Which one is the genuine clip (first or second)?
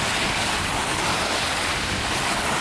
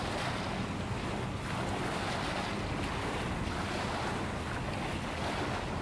second